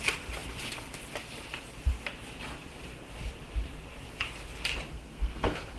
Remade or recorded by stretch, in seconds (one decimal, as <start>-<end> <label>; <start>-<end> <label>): 0.0-4.9 recorded; 4.9-5.8 remade